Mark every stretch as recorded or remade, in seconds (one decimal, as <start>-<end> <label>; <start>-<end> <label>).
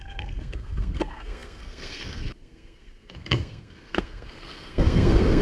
0.0-5.4 remade